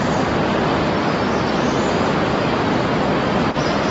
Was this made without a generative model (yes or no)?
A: yes